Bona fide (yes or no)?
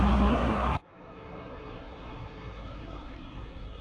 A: no